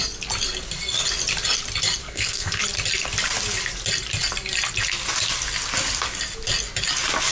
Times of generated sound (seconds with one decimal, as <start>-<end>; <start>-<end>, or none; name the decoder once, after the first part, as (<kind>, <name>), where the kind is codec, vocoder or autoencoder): 2.0-2.6 (codec, SNAC)